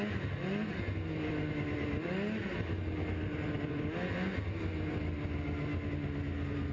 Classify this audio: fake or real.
real